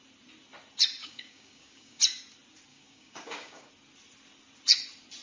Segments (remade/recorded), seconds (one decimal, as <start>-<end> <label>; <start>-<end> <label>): 0.0-1.0 recorded; 1.0-2.0 remade; 2.0-2.7 recorded; 2.7-3.7 remade; 3.7-5.2 recorded

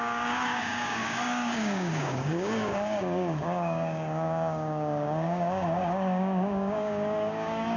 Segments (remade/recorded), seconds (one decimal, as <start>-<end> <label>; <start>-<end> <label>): 0.0-7.8 remade

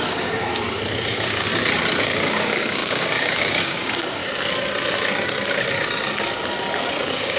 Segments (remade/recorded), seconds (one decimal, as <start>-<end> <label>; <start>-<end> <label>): 0.0-0.5 remade; 0.5-1.1 recorded; 1.1-1.5 remade; 1.5-2.0 recorded; 2.0-4.2 remade; 4.2-7.0 recorded; 7.0-7.4 remade

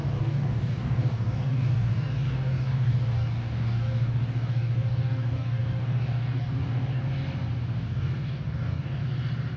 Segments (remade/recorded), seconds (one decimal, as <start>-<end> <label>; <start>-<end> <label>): 0.0-7.0 remade; 7.0-7.6 recorded; 7.6-9.0 remade; 9.0-9.6 recorded